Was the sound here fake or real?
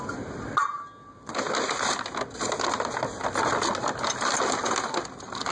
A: real